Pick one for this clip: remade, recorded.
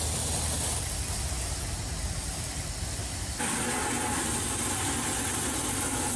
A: recorded